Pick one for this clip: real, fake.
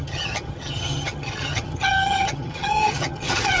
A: fake